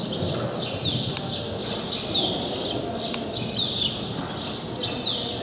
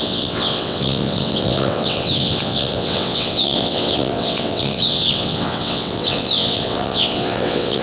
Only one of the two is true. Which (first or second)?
first